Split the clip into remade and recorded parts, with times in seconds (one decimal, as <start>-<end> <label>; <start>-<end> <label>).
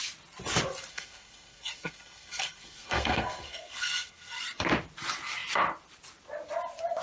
0.0-0.9 recorded; 0.9-4.4 remade; 4.4-7.0 recorded